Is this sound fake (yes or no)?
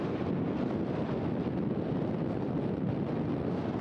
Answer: no